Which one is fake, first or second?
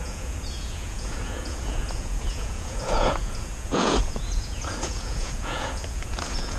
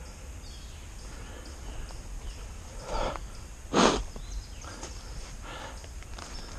first